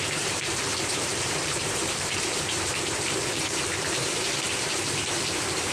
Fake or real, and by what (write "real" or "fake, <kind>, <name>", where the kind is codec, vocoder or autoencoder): fake, vocoder, BigVGAN v2